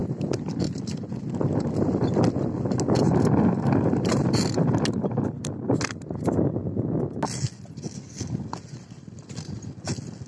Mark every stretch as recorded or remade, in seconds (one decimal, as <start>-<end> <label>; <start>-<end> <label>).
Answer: 0.0-1.1 remade; 1.1-10.3 recorded